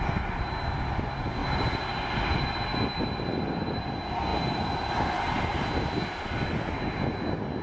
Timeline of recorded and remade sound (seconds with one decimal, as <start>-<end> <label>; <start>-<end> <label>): 0.0-7.6 recorded